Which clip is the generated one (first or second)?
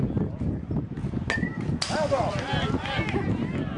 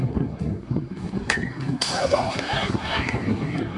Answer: second